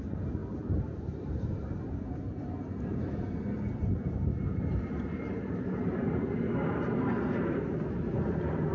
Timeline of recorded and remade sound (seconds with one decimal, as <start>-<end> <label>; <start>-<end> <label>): 0.0-8.7 remade